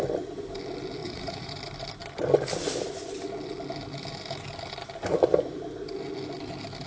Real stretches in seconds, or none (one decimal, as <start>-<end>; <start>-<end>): 0.0-1.0; 1.5-6.9